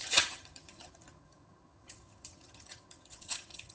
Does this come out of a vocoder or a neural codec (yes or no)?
yes